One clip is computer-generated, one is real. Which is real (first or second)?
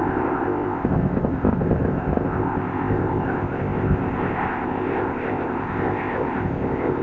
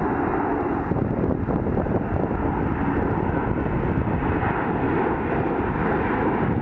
second